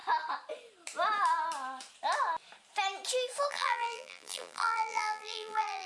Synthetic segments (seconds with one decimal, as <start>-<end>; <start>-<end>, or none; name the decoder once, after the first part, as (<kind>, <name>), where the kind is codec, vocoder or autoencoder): 3.5-5.9 (vocoder, BigVGAN v2)

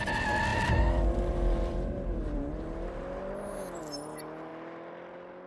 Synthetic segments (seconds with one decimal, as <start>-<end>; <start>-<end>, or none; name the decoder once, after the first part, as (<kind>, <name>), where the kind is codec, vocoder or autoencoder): 0.5-3.8 (vocoder, BigVGAN v2)

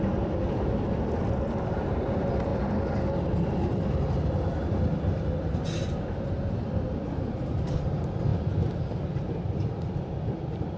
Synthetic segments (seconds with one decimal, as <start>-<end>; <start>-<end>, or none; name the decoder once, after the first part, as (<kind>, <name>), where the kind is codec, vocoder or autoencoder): 0.0-2.5 (vocoder, BigVGAN v2); 6.5-10.8